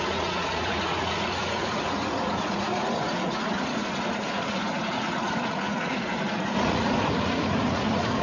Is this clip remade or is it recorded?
remade